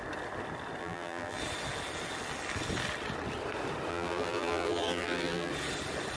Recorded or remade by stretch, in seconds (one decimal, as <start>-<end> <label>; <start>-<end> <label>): 0.0-0.8 recorded; 0.8-1.4 remade; 1.4-3.9 recorded; 3.9-5.5 remade; 5.5-6.2 recorded